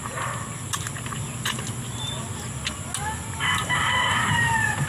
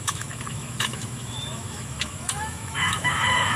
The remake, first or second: second